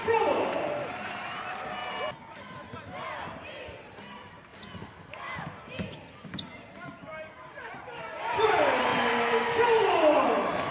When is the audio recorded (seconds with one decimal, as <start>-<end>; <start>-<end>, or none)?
1.8-3.4; 4.5-6.3; 8.9-9.9

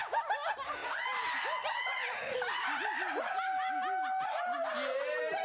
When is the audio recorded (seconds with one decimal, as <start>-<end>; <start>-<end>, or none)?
0.0-5.4

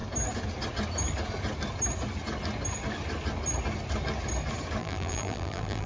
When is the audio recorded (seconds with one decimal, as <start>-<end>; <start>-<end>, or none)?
0.0-4.8

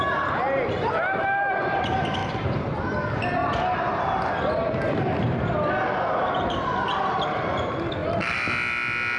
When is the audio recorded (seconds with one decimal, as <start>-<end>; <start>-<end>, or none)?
0.0-2.2; 2.9-9.2